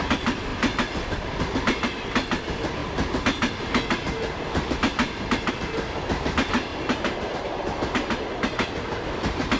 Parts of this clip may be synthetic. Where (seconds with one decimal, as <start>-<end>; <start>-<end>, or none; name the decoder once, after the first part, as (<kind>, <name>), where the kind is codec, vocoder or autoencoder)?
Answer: 0.0-2.8 (vocoder, BigVGAN v2); 5.5-6.7; 7.3-9.6